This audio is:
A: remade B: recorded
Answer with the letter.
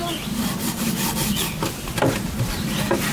B